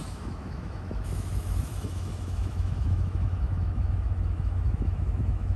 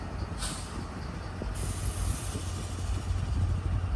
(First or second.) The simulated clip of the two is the first